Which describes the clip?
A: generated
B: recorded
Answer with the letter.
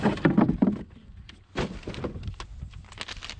B